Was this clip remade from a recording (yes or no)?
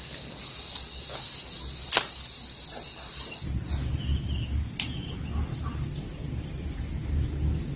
no